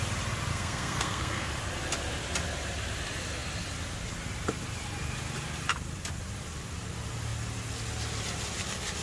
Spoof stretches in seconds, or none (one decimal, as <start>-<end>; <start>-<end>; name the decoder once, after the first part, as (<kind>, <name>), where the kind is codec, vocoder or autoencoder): 0.5-1.5 (codec, SNAC)